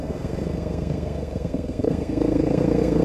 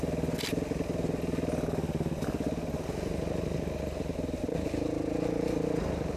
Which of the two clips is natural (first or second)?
second